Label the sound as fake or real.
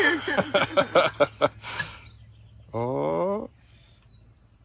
real